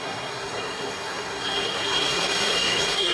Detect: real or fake fake